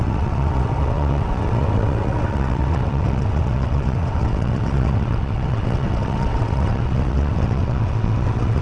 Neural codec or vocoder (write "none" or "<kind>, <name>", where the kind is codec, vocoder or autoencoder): vocoder, WaveNeXt